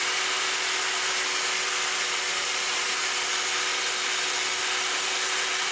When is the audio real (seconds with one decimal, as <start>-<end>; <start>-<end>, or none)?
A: 0.0-2.3; 2.9-5.7